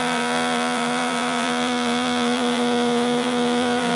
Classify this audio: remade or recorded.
remade